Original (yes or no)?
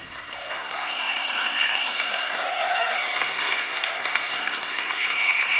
no